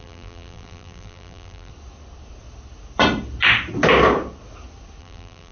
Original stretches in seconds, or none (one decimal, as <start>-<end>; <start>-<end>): 1.7-5.0